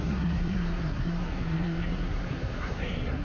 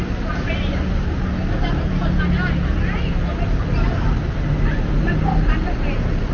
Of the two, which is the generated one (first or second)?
first